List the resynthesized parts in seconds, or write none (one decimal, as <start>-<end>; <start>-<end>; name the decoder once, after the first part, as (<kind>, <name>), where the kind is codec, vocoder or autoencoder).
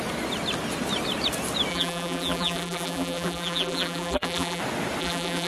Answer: 1.7-4.6 (vocoder, BigVGAN v2); 5.0-5.5